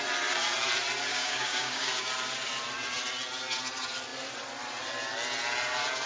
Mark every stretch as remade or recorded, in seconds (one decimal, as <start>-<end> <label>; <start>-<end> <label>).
0.0-1.1 recorded; 1.1-2.1 remade; 2.1-6.1 recorded